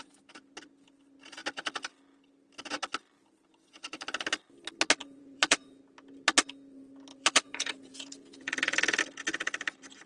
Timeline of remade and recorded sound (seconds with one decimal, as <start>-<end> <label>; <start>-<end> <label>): 0.0-5.0 recorded; 5.0-5.8 remade; 5.8-7.1 recorded; 7.1-9.0 remade; 9.0-10.1 recorded